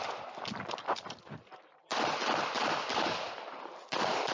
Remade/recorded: remade